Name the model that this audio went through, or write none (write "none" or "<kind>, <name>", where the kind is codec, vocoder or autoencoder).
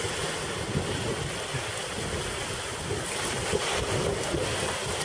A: none